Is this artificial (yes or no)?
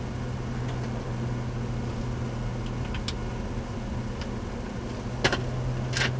no